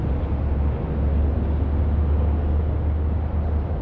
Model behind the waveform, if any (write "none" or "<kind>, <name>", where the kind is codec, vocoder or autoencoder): none